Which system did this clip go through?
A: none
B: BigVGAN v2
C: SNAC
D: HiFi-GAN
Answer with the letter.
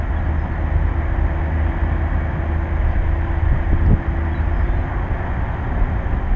A